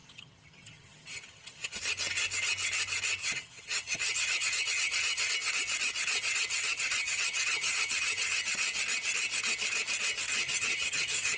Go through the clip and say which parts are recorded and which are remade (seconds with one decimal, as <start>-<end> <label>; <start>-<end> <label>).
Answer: 0.0-1.8 remade; 1.8-3.2 recorded; 3.2-5.3 remade; 5.3-6.5 recorded; 6.5-8.4 remade; 8.4-10.3 recorded; 10.3-11.4 remade